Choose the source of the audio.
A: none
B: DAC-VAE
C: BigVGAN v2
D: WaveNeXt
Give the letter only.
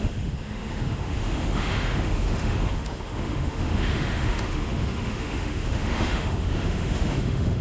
B